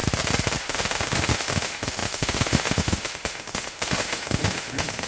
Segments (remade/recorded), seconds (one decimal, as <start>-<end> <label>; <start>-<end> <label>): 0.0-0.6 recorded; 0.6-5.1 remade